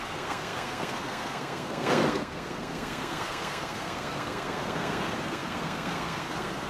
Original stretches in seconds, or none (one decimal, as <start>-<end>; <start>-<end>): none